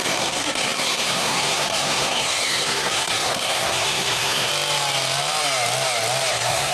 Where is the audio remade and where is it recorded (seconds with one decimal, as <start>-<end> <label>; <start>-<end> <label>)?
0.0-4.5 remade; 4.5-6.3 recorded; 6.3-6.7 remade